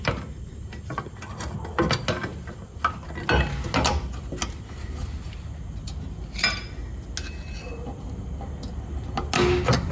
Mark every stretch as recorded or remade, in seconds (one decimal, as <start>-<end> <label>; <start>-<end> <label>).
0.0-9.9 recorded